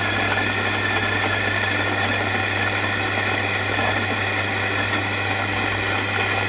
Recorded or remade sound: recorded